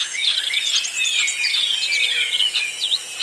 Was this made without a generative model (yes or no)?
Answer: no